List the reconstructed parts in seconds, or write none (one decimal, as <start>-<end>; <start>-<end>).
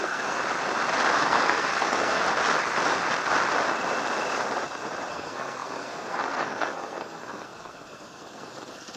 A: 0.0-0.4; 1.2-2.2; 5.1-9.0